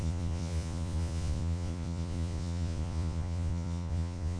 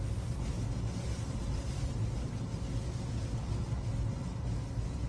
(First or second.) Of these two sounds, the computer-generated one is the first